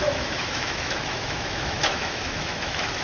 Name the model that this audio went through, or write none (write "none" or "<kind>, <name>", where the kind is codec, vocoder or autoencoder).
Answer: autoencoder, DAC-VAE